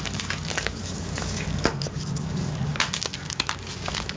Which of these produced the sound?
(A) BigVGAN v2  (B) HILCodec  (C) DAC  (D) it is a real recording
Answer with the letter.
C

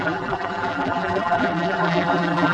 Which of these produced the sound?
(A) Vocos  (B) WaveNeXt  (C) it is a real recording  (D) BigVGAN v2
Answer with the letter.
D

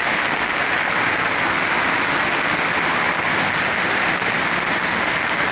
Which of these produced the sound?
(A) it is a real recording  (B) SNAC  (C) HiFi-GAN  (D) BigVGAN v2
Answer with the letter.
A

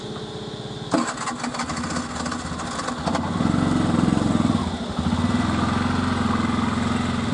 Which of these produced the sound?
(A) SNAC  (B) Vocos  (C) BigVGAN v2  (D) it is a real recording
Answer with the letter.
D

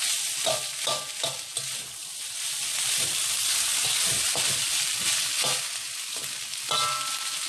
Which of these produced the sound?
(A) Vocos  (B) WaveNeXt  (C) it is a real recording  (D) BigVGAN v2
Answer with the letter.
C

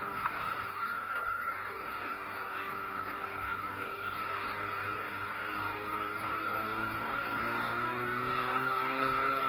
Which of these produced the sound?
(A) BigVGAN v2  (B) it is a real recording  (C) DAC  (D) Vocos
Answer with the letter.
C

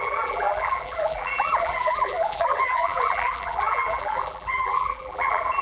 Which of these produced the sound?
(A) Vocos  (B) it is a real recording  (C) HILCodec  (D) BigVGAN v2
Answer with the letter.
D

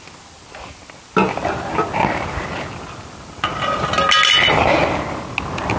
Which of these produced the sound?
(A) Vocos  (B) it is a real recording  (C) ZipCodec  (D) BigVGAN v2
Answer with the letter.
B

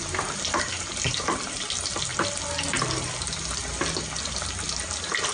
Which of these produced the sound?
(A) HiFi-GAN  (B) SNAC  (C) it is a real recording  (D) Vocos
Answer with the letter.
C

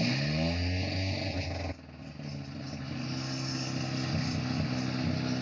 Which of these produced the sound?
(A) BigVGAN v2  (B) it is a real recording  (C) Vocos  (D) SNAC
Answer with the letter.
B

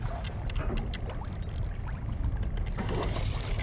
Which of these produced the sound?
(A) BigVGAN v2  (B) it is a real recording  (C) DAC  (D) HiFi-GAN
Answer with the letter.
B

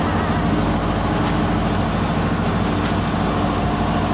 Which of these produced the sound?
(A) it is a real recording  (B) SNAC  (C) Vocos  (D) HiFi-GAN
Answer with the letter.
A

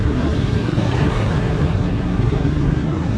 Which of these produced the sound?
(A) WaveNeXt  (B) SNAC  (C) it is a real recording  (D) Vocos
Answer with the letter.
B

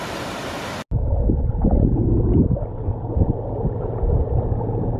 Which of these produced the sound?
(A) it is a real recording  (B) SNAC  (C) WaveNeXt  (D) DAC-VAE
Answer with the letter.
A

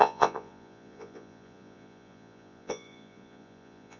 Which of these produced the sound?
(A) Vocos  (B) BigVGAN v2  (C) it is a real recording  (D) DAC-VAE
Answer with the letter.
A